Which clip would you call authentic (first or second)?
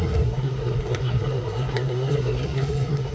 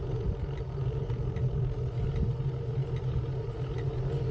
second